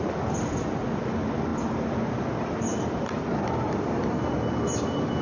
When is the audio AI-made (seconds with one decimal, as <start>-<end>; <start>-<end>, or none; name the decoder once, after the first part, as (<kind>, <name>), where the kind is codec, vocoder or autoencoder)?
none